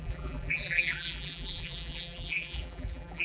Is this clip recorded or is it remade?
remade